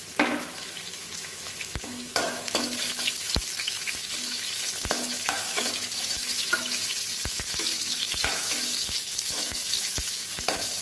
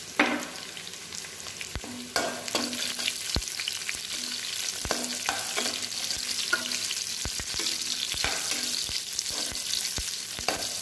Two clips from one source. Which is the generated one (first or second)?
first